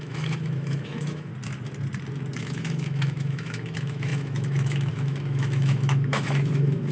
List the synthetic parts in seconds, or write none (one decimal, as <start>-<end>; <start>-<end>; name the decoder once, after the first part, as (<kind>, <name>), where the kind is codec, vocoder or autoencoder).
0.0-1.3 (autoencoder, DAC-VAE); 2.4-6.9